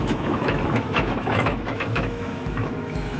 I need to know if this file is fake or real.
fake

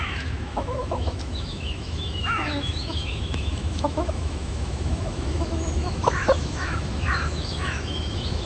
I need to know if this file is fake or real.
fake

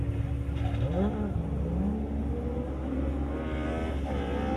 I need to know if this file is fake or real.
real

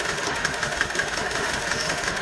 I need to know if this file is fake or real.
fake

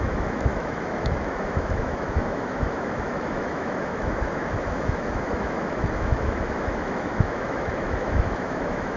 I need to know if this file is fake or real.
fake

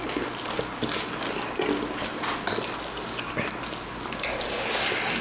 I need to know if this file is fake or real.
real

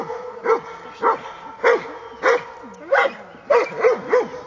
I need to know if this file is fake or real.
real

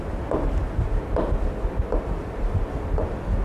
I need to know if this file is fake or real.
real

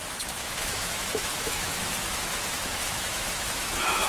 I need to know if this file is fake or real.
fake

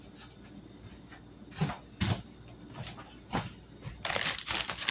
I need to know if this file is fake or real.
real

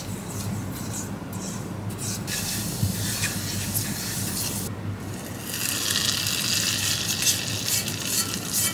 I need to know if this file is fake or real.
real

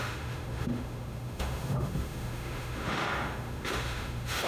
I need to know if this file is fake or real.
fake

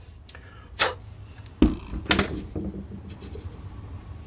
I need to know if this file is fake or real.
real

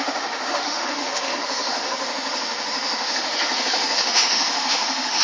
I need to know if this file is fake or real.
fake